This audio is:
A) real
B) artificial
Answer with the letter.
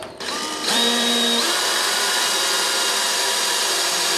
B